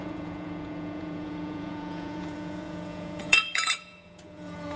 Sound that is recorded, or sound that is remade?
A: remade